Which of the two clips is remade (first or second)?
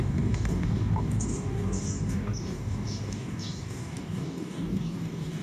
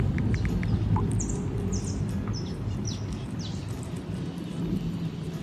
first